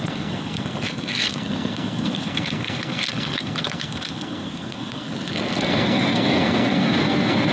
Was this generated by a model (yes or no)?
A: yes